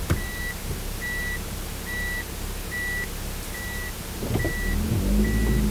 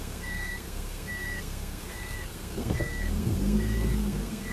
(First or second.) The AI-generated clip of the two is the second